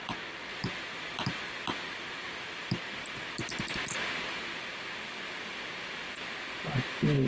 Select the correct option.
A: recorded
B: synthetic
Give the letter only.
A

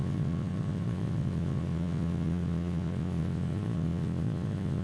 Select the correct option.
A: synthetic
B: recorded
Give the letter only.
A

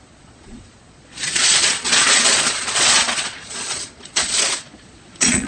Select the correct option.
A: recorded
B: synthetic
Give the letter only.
B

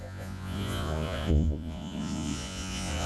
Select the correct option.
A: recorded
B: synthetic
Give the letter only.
B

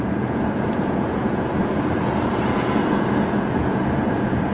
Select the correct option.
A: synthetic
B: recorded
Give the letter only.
A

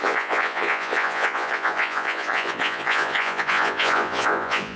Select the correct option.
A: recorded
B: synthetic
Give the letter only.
B